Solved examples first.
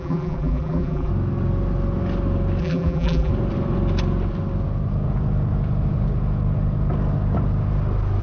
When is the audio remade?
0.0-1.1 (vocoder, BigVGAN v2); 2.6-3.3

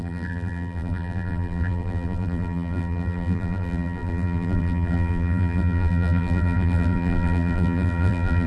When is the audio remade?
0.0-8.5 (vocoder, BigVGAN v2)

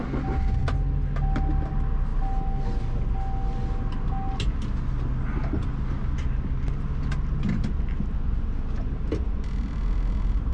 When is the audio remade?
none

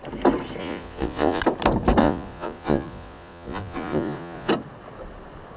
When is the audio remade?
0.6-1.4 (vocoder, Vocos); 2.0-4.5

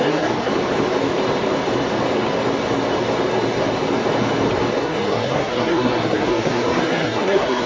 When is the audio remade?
0.0-0.5 (codec, SNAC); 4.8-7.7

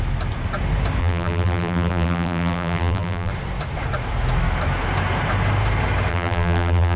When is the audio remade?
1.0-3.3 (vocoder, BigVGAN v2); 6.1-7.0